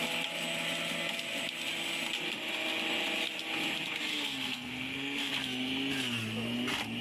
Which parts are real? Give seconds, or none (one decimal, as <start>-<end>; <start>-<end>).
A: 0.0-4.1; 5.3-7.0